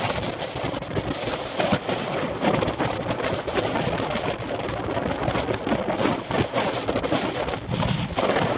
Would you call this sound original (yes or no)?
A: yes